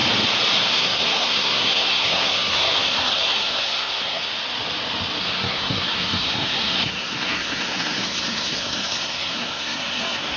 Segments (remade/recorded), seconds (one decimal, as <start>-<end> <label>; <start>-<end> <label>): 0.0-0.7 recorded; 0.7-4.3 remade; 4.3-5.2 recorded; 5.2-10.4 remade